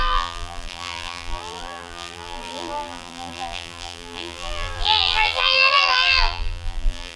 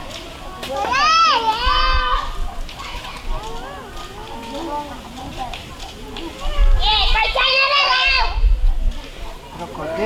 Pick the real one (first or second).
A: second